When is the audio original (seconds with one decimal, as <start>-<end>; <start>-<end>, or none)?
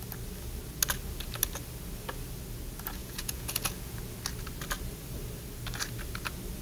0.0-3.0; 4.0-6.6